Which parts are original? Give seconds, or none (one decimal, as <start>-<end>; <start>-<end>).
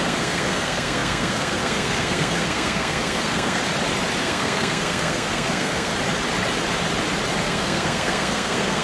3.6-4.2; 5.9-7.4